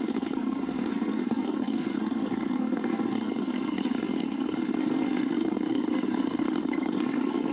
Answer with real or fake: fake